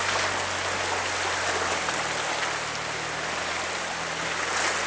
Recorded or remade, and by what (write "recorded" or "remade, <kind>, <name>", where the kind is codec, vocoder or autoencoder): recorded